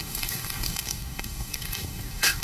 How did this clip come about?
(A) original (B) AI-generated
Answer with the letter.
B